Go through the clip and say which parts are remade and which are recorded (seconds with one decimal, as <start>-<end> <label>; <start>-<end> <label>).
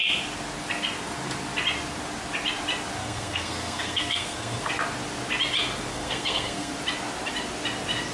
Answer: 0.0-3.0 recorded; 3.0-4.7 remade; 4.7-5.9 recorded; 5.9-6.7 remade; 6.7-8.1 recorded